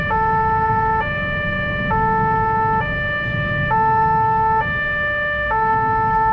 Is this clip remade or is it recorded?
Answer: recorded